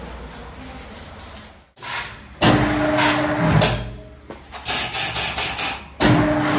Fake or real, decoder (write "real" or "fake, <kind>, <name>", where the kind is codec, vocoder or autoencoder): real